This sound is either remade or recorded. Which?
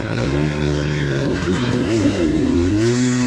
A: remade